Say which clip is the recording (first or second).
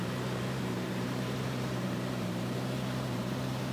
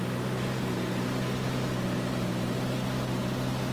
second